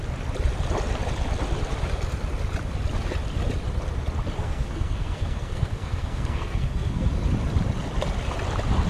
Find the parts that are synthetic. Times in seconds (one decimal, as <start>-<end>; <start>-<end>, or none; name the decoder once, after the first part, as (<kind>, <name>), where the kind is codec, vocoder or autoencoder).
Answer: 4.4-7.1 (codec, SNAC)